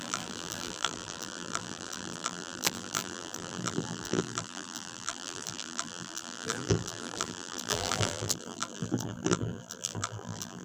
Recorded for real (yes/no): no